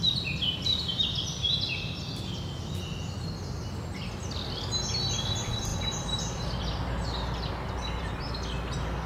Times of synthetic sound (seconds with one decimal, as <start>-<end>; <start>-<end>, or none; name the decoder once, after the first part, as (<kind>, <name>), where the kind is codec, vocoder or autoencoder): none